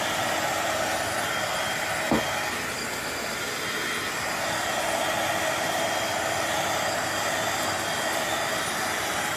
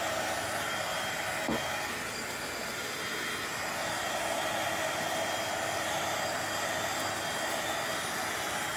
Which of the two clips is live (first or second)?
second